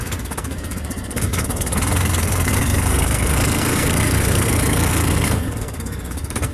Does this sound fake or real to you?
fake